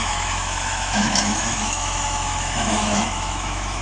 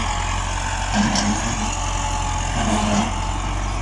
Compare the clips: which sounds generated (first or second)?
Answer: first